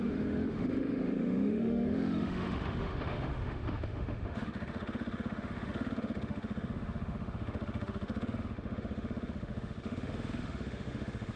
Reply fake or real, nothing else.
fake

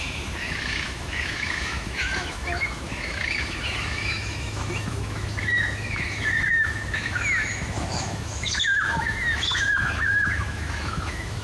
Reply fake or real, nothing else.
fake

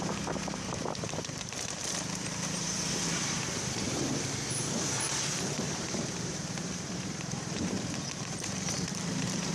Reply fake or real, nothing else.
fake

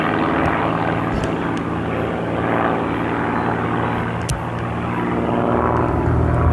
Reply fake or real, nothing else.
real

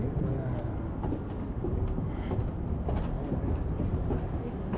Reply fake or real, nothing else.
real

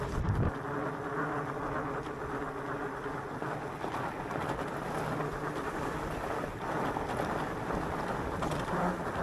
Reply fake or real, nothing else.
real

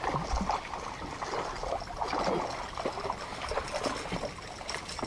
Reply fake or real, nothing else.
real